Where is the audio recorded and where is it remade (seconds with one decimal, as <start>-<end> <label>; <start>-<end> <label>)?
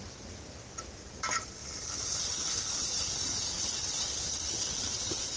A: 0.0-5.4 recorded